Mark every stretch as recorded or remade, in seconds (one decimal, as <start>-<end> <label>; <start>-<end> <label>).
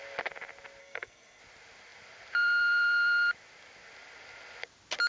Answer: 0.0-0.8 recorded; 0.8-1.4 remade; 1.4-5.1 recorded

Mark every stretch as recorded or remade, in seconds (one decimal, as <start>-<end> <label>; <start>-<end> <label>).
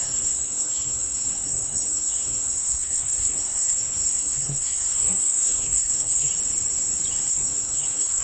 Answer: 0.0-6.3 remade; 6.3-7.3 recorded; 7.3-8.2 remade